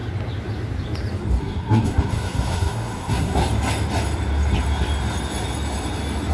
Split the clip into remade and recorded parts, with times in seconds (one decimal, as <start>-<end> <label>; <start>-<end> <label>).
0.0-1.4 recorded; 1.4-3.4 remade; 3.4-6.3 recorded